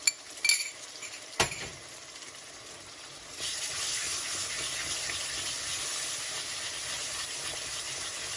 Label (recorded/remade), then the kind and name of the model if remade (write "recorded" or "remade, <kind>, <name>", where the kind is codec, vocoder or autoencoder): recorded